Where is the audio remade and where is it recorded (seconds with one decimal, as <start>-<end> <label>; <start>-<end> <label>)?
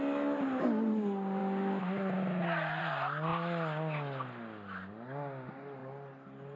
0.0-6.6 recorded